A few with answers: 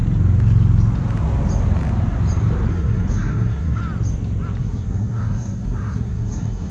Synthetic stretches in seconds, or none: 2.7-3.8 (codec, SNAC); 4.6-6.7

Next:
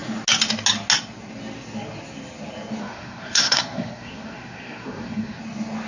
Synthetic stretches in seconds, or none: 2.8-5.4 (codec, SNAC)